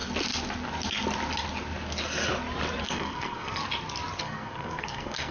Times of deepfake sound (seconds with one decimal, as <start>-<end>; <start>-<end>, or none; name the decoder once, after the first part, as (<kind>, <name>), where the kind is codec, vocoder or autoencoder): 2.8-3.6 (codec, SNAC); 4.2-5.3